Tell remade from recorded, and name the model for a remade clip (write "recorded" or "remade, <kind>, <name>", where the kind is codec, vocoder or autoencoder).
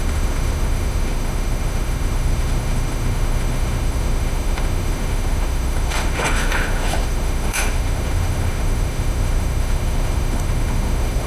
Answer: remade, autoencoder, DAC-VAE